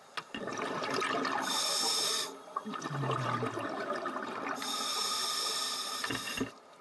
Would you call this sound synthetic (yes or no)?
no